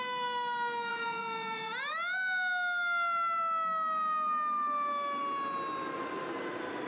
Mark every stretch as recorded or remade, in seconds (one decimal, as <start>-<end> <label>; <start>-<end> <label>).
0.0-0.9 recorded; 0.9-1.7 remade; 1.7-6.9 recorded